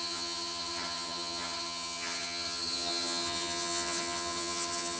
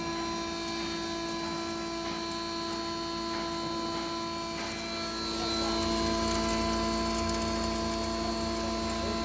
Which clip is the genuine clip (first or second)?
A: second